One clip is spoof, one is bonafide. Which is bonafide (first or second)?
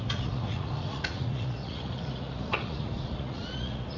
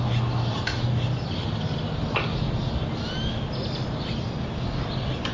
second